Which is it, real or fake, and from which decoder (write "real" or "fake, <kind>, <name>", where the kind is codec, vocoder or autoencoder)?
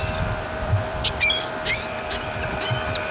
fake, vocoder, BigVGAN v2